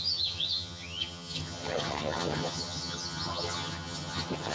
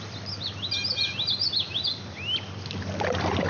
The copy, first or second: first